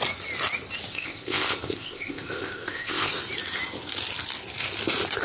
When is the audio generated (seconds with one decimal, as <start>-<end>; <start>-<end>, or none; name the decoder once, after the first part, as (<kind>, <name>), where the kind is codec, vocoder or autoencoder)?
0.9-3.1 (codec, ZipCodec)